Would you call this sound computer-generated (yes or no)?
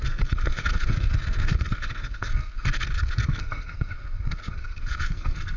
yes